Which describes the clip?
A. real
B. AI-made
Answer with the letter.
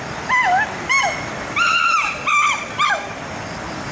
A